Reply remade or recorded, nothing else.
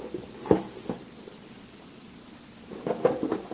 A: recorded